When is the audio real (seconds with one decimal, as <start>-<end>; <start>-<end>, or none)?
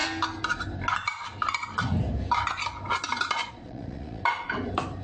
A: 0.0-3.4; 4.2-5.0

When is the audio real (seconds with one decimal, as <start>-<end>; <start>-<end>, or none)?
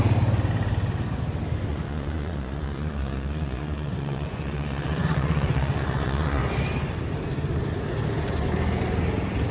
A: 0.0-1.7; 6.4-9.5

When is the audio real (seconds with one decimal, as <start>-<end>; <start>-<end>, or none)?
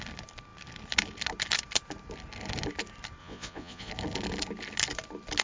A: 0.0-3.2; 3.9-5.4